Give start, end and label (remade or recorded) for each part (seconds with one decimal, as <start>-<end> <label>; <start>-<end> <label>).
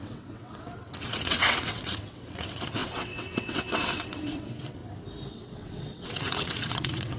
0.0-4.8 remade; 4.8-5.3 recorded; 5.3-7.2 remade